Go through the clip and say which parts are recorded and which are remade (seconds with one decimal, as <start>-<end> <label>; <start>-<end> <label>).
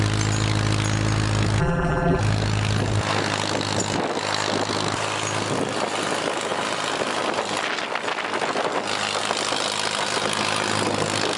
0.0-1.6 recorded; 1.6-2.2 remade; 2.2-11.4 recorded